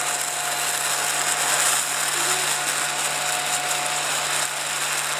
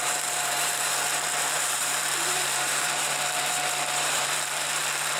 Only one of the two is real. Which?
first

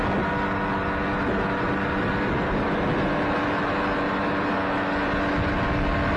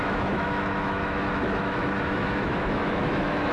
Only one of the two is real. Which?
first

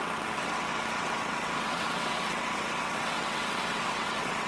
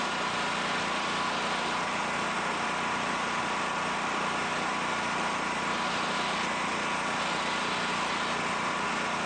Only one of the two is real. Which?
second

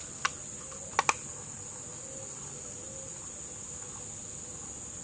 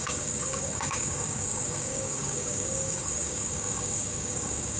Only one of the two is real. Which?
first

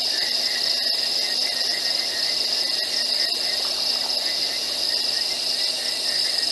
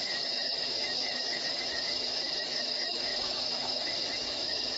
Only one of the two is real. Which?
first